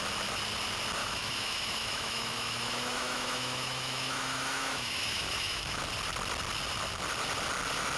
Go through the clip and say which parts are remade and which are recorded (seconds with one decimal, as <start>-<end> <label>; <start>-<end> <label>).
0.0-1.0 recorded; 1.0-5.8 remade; 5.8-8.0 recorded

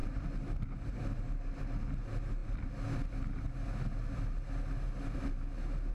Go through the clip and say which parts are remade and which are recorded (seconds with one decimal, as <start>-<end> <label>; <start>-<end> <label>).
0.0-5.9 recorded

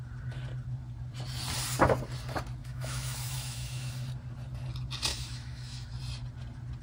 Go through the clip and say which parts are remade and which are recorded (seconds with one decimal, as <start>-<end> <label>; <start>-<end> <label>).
0.0-2.6 recorded; 2.6-3.9 remade; 3.9-5.1 recorded; 5.1-5.9 remade; 5.9-6.8 recorded

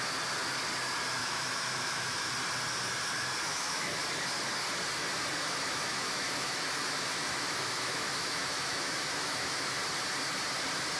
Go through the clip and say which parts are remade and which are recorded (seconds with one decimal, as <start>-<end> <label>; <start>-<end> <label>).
0.0-1.2 recorded; 1.2-2.3 remade; 2.3-3.5 recorded; 3.5-4.0 remade; 4.0-5.4 recorded; 5.4-9.8 remade; 9.8-11.0 recorded

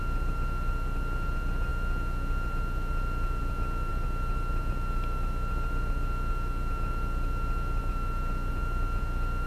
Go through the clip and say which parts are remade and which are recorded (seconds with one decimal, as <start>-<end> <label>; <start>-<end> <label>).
0.0-9.5 recorded

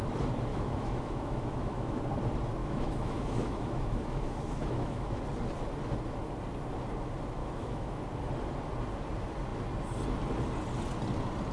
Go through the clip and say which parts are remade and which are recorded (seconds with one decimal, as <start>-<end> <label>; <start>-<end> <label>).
0.0-0.5 recorded; 0.5-2.0 remade; 2.0-2.6 recorded; 2.6-5.2 remade; 5.2-7.4 recorded; 7.4-8.0 remade; 8.0-11.5 recorded

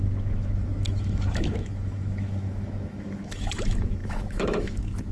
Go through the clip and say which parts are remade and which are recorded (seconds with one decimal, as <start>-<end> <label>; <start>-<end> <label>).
0.0-5.1 remade

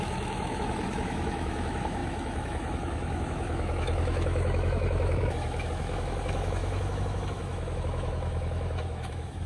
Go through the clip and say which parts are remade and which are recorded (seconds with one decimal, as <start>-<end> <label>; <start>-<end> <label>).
0.0-9.5 remade